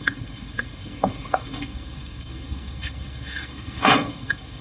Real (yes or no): no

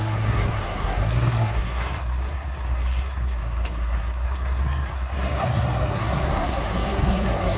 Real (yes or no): no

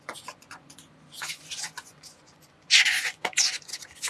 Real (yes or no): no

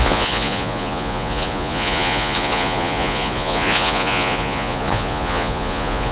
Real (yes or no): no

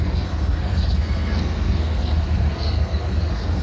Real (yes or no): no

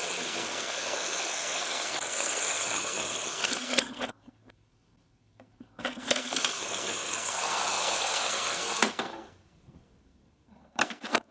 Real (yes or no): no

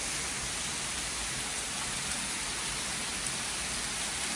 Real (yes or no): yes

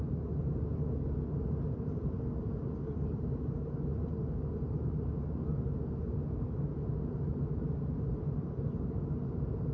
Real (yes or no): yes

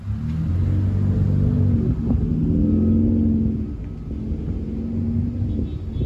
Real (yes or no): yes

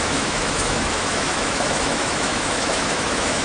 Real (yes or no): no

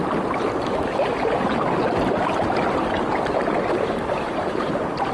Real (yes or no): yes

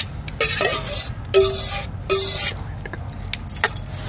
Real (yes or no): yes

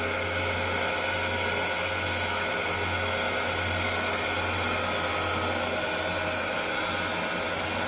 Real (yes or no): yes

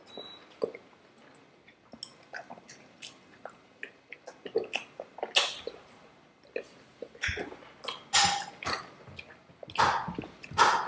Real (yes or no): yes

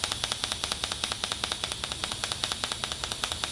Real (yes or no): yes